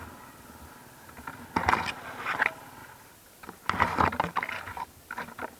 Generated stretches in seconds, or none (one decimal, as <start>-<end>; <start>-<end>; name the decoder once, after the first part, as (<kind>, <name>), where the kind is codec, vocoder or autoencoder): none